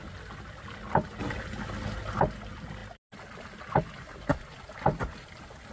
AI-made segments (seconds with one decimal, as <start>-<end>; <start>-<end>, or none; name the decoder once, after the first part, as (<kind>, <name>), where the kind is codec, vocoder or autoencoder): none